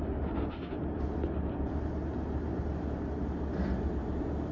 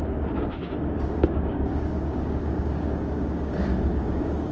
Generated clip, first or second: second